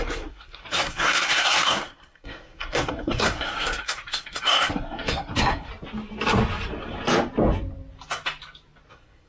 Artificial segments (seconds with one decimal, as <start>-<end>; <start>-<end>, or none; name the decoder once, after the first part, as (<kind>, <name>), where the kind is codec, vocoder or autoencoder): 0.0-5.7 (codec, SNAC); 8.9-9.3